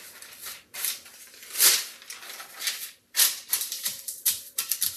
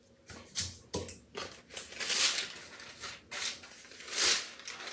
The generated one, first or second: first